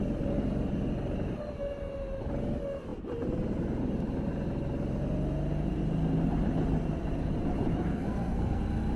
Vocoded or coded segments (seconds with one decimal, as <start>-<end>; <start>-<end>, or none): 7.9-8.6